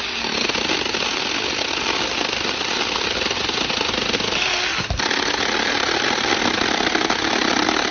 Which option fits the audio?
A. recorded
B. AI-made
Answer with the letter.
A